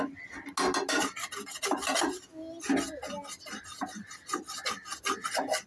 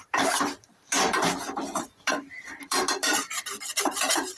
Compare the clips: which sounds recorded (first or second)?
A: first